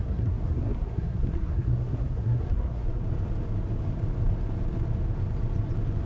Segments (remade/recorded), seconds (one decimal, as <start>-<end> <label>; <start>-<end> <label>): 0.0-3.0 remade; 3.0-6.1 recorded